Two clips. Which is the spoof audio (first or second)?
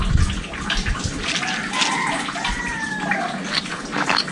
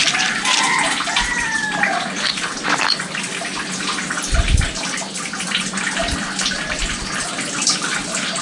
second